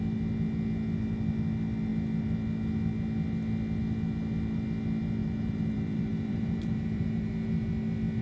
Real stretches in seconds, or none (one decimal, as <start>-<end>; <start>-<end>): 0.0-5.2; 7.3-8.2